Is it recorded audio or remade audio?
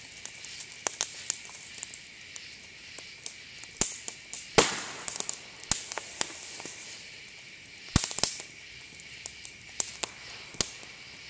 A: recorded